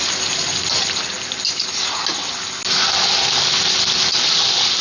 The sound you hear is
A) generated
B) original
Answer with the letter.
B